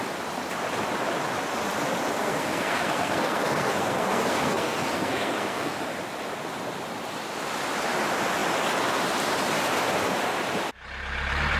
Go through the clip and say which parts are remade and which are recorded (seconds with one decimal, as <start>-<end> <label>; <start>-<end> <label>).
0.0-2.1 recorded; 2.1-5.8 remade; 5.8-11.6 recorded